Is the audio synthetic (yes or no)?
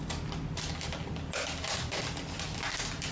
no